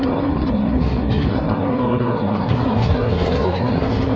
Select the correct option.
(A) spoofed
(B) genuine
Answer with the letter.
A